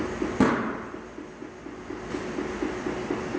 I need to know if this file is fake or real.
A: real